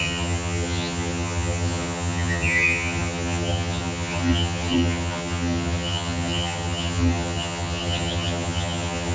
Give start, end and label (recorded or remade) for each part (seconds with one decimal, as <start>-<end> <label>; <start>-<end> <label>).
0.0-9.1 remade